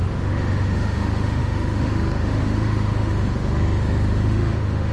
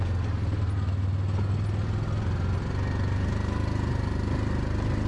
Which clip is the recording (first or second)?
second